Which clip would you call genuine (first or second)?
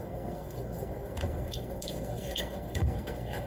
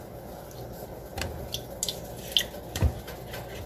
second